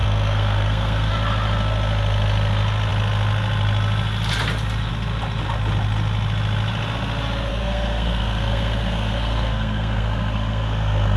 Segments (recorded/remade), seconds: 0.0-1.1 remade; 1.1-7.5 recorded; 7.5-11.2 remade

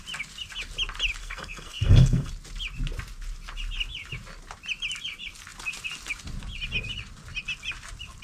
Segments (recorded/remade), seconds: 0.0-1.2 recorded; 1.2-2.3 remade; 2.3-8.2 recorded

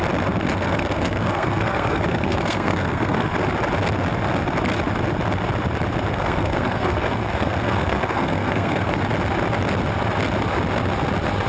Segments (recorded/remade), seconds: 0.0-0.4 recorded; 0.4-3.3 remade; 3.3-6.1 recorded; 6.1-9.0 remade; 9.0-11.5 recorded

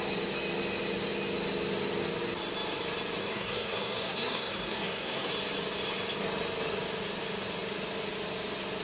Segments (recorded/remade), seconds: 0.0-3.2 recorded; 3.2-5.3 remade; 5.3-8.8 recorded

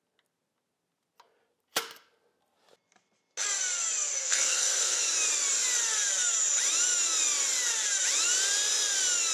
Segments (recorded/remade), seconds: 0.0-4.2 recorded; 4.2-5.0 remade; 5.0-9.3 recorded

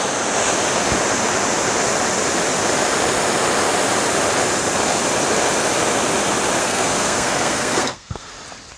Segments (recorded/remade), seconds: 0.0-6.6 recorded; 6.6-8.3 remade; 8.3-8.8 recorded